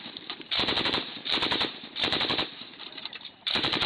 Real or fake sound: fake